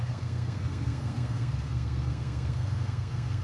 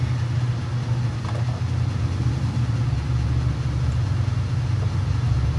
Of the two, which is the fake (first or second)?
first